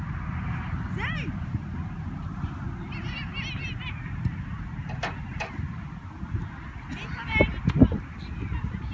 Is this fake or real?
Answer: real